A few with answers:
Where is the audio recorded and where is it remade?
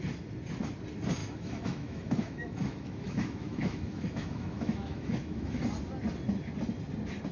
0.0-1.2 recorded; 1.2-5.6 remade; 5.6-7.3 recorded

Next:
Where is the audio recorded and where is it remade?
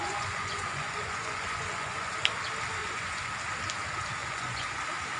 0.0-2.1 remade; 2.1-2.8 recorded; 2.8-3.3 remade; 3.3-4.2 recorded; 4.2-4.7 remade; 4.7-5.2 recorded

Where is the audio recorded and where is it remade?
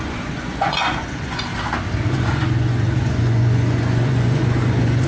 0.0-1.5 remade; 1.5-2.1 recorded; 2.1-5.1 remade